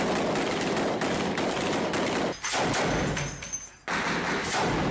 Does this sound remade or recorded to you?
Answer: recorded